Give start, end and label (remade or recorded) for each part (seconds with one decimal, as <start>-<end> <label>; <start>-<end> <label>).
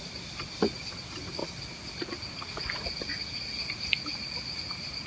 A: 0.0-5.1 recorded